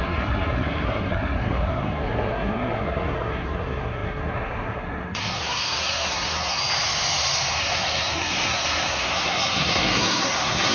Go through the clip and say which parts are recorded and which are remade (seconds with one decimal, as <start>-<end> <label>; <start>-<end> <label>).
0.0-6.6 remade; 6.6-7.6 recorded; 7.6-10.7 remade